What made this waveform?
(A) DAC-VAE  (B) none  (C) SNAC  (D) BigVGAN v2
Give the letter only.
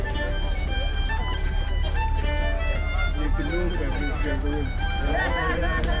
B